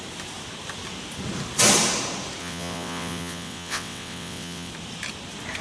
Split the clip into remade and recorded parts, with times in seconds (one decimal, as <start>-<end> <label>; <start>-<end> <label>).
0.0-2.4 recorded; 2.4-4.7 remade; 4.7-5.6 recorded